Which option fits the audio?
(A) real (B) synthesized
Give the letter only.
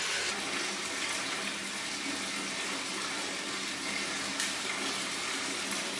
A